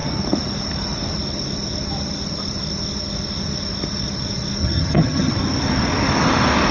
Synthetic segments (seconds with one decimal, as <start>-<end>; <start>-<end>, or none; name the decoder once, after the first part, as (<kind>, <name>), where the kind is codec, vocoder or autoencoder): 4.6-5.3 (vocoder, HiFi-GAN)